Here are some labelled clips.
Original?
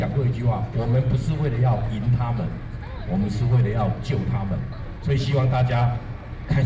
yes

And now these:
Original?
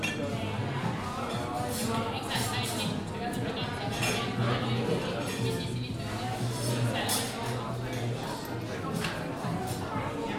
yes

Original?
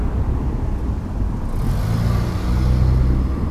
yes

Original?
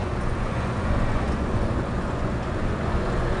no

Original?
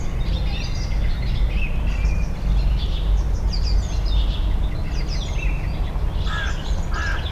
yes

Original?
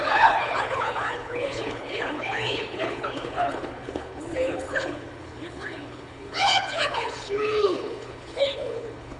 no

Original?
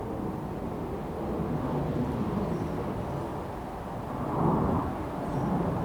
yes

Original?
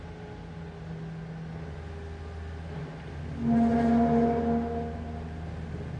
yes